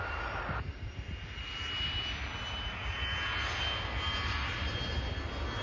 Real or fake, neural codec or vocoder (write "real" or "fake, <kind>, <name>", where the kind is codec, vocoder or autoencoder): real